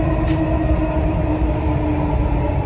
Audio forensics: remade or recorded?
recorded